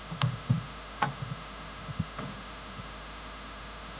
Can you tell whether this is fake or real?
fake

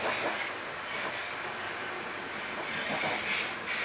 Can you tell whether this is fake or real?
real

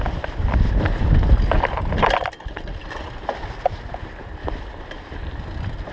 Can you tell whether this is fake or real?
real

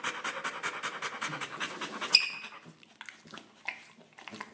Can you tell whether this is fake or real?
real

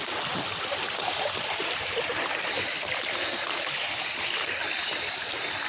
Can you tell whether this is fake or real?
real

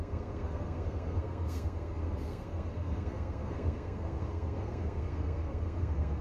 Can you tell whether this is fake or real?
fake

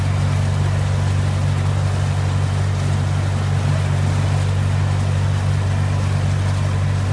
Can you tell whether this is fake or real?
real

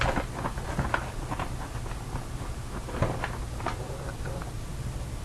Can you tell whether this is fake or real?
real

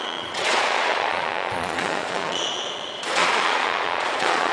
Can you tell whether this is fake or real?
fake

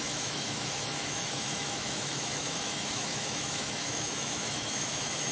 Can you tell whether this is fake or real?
fake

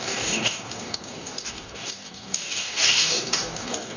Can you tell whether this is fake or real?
fake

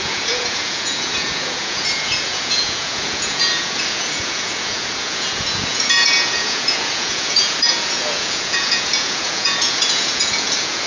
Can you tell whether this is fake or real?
fake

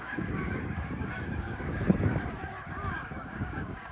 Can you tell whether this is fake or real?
fake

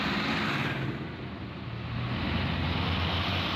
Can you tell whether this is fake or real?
real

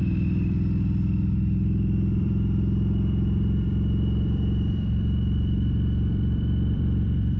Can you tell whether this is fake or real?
fake